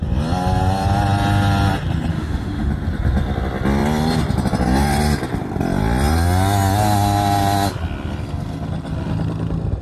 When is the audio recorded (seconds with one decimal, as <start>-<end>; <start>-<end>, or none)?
0.0-2.1; 2.7-9.8